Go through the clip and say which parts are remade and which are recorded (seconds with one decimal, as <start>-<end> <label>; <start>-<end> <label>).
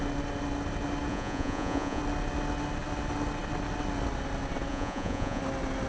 0.0-1.1 recorded; 1.1-2.0 remade; 2.0-4.7 recorded; 4.7-5.4 remade; 5.4-5.9 recorded